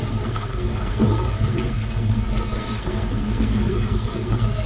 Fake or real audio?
fake